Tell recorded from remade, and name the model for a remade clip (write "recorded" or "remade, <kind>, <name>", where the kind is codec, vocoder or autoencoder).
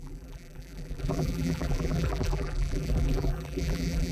remade, vocoder, BigVGAN v2